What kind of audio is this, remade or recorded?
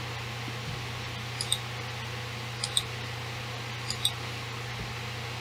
recorded